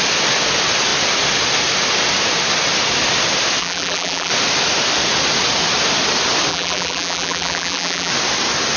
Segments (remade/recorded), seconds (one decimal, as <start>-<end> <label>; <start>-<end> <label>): 0.0-3.6 recorded; 3.6-4.3 remade; 4.3-6.5 recorded; 6.5-8.1 remade; 8.1-8.8 recorded